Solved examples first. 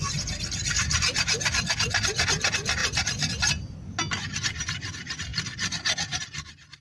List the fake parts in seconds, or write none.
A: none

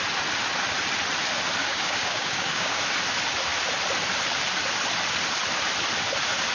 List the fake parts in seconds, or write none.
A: 1.6-2.8 (codec, DAC)